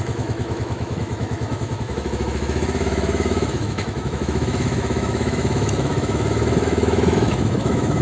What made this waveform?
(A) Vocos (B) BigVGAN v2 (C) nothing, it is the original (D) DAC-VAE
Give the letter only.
D